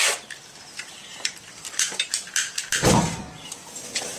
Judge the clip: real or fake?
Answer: fake